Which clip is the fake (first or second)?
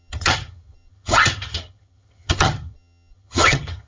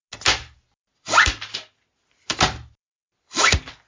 first